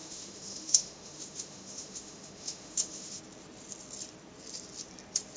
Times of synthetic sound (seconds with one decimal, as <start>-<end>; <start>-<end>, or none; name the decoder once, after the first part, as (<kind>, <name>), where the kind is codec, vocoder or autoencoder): 0.0-3.2 (autoencoder, DAC-VAE)